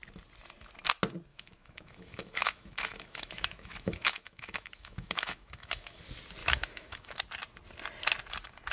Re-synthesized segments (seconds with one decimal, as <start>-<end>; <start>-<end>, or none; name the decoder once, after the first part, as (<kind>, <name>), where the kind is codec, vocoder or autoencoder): 1.3-6.0 (autoencoder, DAC-VAE); 6.4-7.2